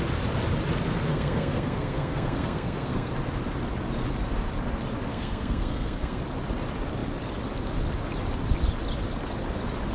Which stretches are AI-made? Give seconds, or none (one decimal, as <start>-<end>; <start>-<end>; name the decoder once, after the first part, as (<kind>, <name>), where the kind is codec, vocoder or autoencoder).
1.1-3.1 (codec, SNAC); 5.1-6.2